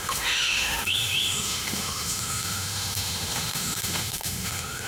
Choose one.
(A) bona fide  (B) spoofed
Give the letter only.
B